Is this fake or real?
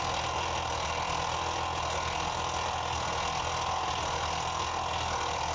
real